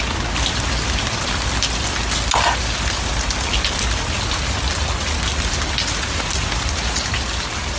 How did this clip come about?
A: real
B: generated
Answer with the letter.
A